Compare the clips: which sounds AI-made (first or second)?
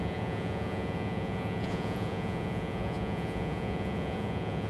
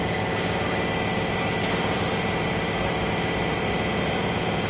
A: first